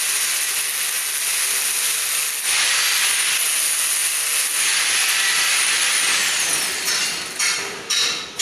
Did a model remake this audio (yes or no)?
no